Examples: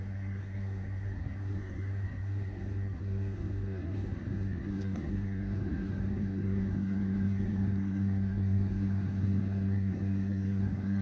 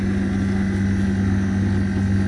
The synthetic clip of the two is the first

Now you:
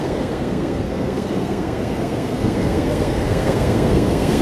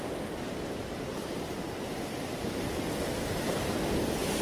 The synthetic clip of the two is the first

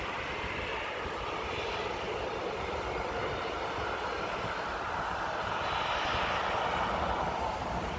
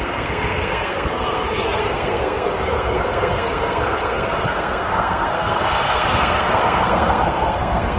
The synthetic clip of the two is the second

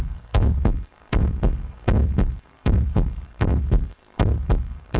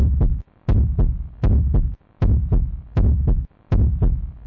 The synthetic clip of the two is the first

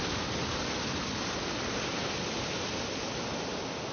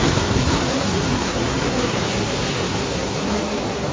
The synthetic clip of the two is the second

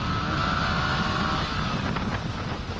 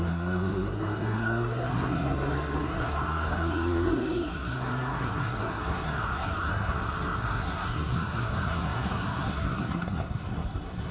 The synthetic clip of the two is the second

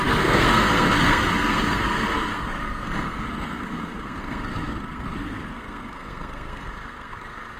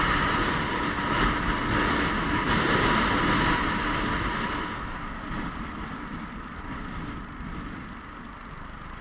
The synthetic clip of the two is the first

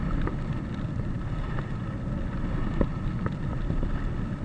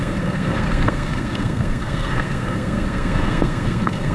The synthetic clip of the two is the second